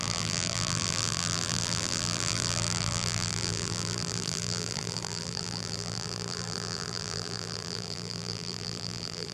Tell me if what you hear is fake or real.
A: fake